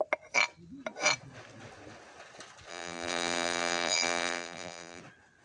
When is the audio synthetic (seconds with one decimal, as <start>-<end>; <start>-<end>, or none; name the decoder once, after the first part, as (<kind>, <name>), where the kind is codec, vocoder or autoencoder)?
2.7-5.0 (vocoder, BigVGAN v2)